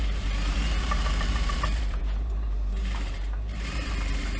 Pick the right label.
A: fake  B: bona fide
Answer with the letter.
A